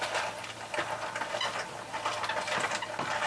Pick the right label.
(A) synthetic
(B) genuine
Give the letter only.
B